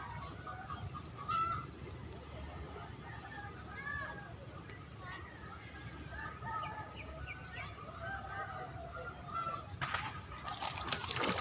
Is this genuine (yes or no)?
yes